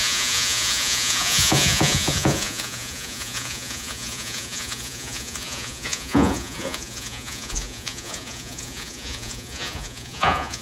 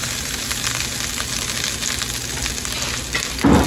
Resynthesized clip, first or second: first